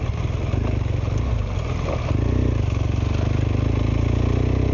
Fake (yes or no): no